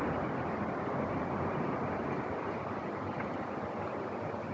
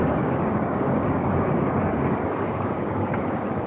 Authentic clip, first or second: first